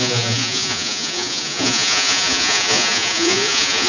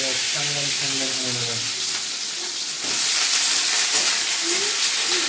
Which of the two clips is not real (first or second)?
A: first